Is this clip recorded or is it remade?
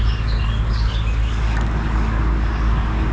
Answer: remade